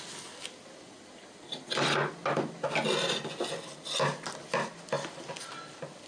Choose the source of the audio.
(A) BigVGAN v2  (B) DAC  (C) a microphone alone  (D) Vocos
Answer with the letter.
C